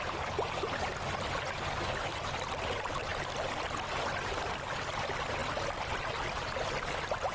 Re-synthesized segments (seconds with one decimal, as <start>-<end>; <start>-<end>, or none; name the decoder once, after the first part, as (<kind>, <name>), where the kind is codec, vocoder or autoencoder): none